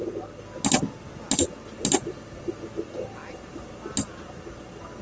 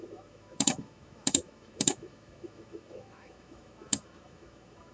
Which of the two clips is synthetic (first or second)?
second